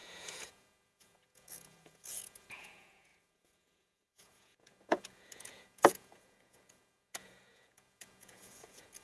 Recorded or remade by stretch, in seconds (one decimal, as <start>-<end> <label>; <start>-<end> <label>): 0.0-9.0 remade